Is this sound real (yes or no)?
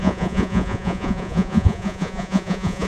no